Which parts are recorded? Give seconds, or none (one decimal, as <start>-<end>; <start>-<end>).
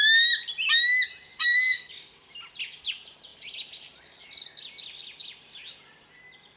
0.0-1.4; 1.9-6.6